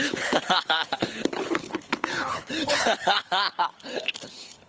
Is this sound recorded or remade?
remade